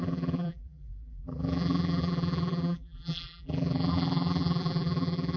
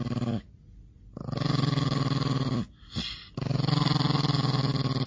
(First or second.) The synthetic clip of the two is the first